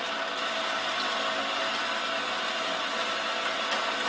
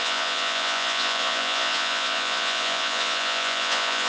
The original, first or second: first